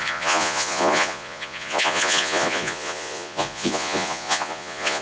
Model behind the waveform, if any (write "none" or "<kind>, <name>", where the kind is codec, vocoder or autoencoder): vocoder, Vocos